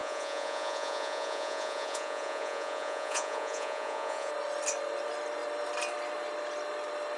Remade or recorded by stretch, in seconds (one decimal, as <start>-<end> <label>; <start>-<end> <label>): 0.0-4.3 remade; 4.3-7.2 recorded